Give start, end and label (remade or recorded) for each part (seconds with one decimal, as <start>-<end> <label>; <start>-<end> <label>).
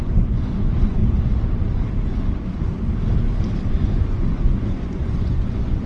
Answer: 0.0-1.0 remade; 1.0-3.6 recorded; 3.6-5.9 remade